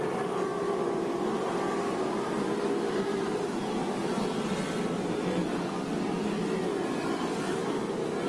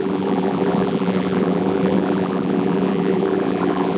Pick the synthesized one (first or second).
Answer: second